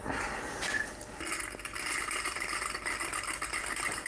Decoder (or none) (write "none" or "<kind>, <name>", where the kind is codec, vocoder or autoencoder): none